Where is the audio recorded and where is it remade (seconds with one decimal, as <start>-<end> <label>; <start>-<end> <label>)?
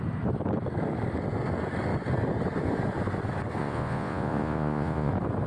0.0-3.6 recorded; 3.6-5.1 remade; 5.1-5.5 recorded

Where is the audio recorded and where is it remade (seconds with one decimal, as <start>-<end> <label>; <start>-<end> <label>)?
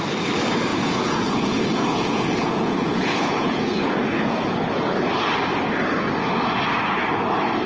0.0-0.7 recorded; 0.7-4.5 remade; 4.5-7.7 recorded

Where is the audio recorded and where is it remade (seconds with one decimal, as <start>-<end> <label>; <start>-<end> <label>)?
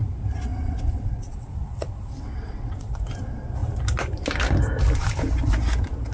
0.0-0.5 recorded; 0.5-2.9 remade; 2.9-6.1 recorded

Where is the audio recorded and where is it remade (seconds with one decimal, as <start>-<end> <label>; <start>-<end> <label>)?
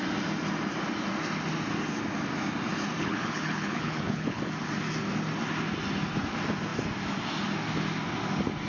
0.0-3.0 recorded; 3.0-4.4 remade; 4.4-8.7 recorded